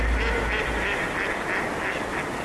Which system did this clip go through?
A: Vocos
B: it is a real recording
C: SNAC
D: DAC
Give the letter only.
B